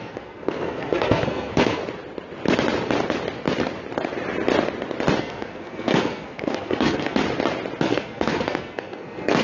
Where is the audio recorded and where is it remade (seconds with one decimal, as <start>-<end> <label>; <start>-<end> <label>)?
0.0-1.8 remade; 1.8-5.2 recorded; 5.2-7.2 remade; 7.2-7.8 recorded; 7.8-9.4 remade